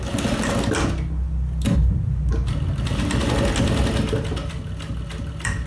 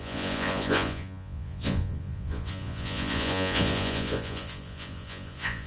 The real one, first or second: first